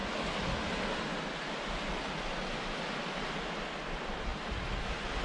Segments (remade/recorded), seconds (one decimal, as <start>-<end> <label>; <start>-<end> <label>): 0.0-5.2 recorded